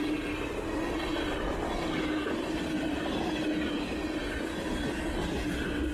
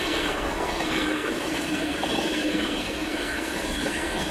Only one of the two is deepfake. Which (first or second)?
second